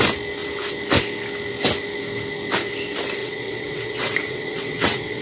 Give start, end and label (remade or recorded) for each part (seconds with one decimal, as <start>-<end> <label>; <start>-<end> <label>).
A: 0.0-3.2 recorded; 3.2-5.2 remade